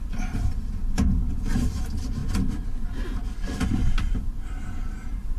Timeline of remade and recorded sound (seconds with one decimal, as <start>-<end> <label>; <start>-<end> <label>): 0.0-2.2 remade; 2.2-2.8 recorded; 2.8-3.2 remade; 3.2-4.1 recorded; 4.1-5.4 remade